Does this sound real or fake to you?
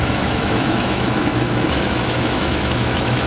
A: fake